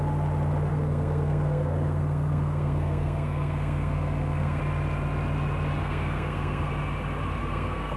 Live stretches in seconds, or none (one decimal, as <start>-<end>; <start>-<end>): 0.0-0.7; 4.6-5.8; 6.7-7.4